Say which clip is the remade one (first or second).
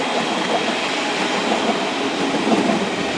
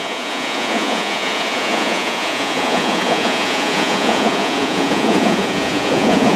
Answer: second